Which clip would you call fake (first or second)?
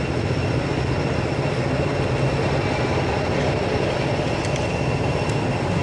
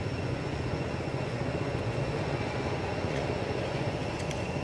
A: second